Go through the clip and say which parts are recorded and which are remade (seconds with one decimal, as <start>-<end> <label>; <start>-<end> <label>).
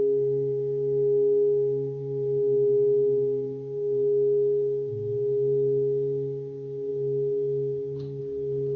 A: 0.0-8.8 recorded